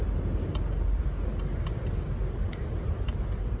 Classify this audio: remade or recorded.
recorded